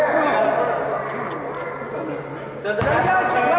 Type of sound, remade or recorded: recorded